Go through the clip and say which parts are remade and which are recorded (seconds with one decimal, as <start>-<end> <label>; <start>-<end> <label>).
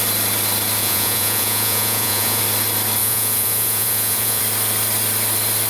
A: 0.0-0.8 recorded; 0.8-2.4 remade; 2.4-3.0 recorded; 3.0-4.4 remade; 4.4-5.7 recorded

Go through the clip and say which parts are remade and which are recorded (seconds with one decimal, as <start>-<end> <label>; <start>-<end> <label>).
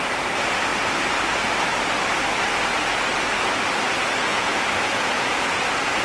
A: 0.0-4.2 recorded; 4.2-5.6 remade; 5.6-6.0 recorded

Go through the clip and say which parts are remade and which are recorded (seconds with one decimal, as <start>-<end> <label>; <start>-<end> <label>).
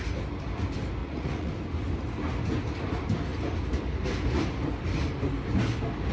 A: 0.0-1.0 recorded; 1.0-1.5 remade; 1.5-6.1 recorded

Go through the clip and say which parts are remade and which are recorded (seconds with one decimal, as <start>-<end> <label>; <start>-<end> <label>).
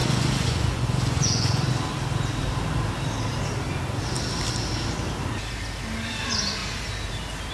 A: 0.0-1.7 remade; 1.7-7.5 recorded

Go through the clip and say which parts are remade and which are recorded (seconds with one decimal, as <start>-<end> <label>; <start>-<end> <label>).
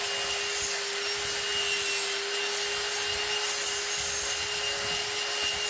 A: 0.0-5.7 recorded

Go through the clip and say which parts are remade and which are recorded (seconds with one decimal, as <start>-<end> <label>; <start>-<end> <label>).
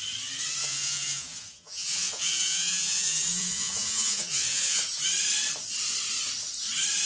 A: 0.0-0.6 recorded; 0.6-4.8 remade; 4.8-7.1 recorded